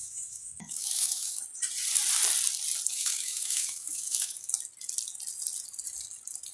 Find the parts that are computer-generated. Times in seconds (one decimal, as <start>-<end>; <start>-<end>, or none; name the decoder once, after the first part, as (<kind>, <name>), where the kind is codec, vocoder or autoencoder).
0.0-1.4 (autoencoder, DAC-VAE); 2.9-4.5